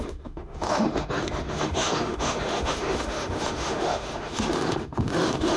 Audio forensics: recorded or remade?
remade